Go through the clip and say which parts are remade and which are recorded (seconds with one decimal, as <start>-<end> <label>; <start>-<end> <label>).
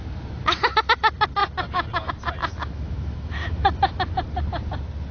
0.0-2.5 recorded; 2.5-4.1 remade; 4.1-5.1 recorded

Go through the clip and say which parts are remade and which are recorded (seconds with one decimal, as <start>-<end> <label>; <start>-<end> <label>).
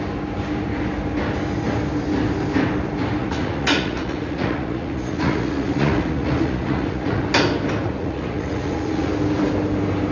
0.0-3.2 recorded; 3.2-7.2 remade; 7.2-7.8 recorded; 7.8-9.1 remade; 9.1-10.1 recorded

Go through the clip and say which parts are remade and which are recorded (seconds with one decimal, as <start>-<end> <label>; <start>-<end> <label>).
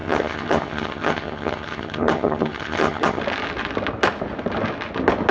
0.0-3.2 remade; 3.2-5.3 recorded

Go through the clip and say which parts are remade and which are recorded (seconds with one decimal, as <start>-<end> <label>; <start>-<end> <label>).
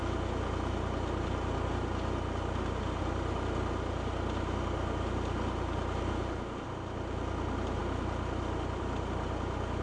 0.0-9.8 recorded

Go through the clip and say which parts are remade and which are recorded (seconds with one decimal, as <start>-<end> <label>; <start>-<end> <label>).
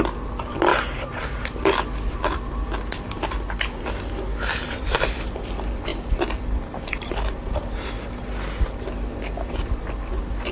0.0-0.7 recorded; 0.7-1.6 remade; 1.6-4.3 recorded; 4.3-5.0 remade; 5.0-5.9 recorded; 5.9-7.9 remade; 7.9-10.5 recorded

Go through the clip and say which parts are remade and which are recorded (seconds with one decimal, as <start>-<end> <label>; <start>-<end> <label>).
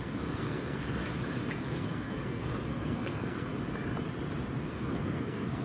0.0-1.0 remade; 1.0-1.6 recorded; 1.6-3.5 remade; 3.5-4.6 recorded; 4.6-5.6 remade